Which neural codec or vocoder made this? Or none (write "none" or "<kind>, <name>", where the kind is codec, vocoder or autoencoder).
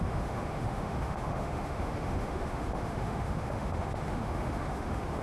autoencoder, DAC-VAE